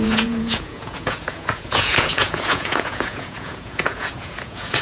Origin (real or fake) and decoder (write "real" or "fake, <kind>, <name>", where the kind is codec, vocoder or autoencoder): fake, vocoder, Vocos